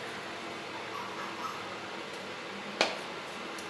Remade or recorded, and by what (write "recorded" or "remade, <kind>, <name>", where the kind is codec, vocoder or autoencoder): recorded